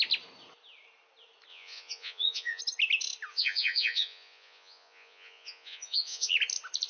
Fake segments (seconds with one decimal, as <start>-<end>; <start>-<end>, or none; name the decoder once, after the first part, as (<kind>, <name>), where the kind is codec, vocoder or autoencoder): 1.5-2.6 (vocoder, Vocos); 3.3-6.3